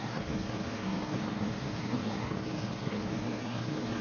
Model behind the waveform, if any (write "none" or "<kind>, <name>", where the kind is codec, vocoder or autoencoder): codec, SNAC